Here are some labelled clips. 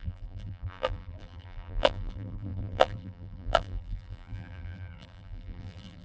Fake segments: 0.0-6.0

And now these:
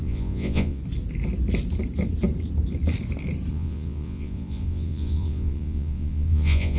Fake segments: 0.0-0.8; 3.5-6.8

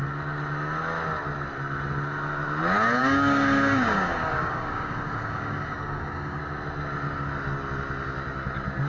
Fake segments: 3.0-6.4